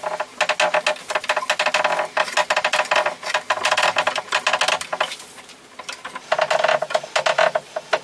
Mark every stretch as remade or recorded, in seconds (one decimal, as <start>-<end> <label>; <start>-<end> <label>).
0.0-8.0 recorded